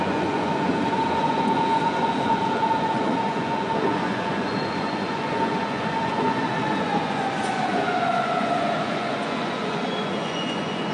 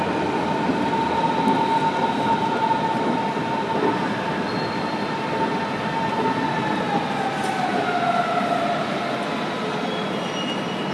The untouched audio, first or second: second